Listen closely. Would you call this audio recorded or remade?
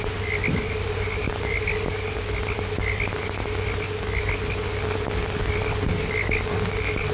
recorded